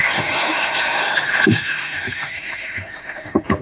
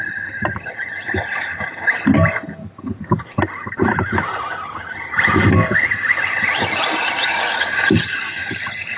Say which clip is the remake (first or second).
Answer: first